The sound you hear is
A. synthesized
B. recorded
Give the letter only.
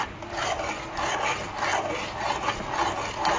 B